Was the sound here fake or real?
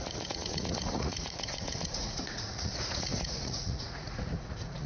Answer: fake